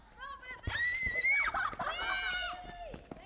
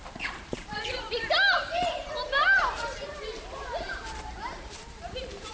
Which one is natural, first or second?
first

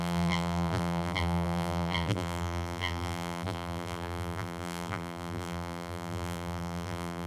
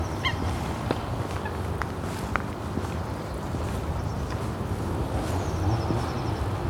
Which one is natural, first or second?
second